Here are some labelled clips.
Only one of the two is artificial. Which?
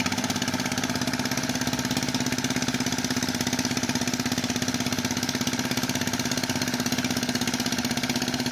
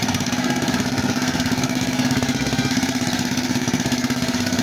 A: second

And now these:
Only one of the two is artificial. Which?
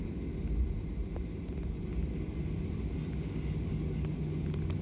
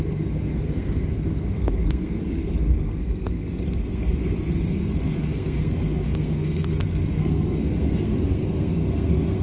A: second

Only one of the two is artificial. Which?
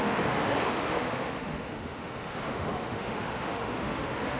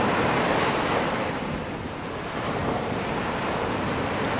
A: first